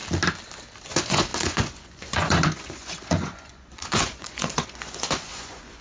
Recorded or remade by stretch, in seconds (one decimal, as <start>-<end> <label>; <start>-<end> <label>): 0.0-0.8 recorded; 0.8-5.8 remade